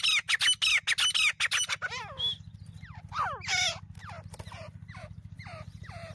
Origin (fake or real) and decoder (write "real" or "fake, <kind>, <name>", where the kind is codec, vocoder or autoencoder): real